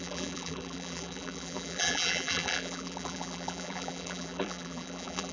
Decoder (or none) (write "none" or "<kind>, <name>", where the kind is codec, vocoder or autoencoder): vocoder, BigVGAN v2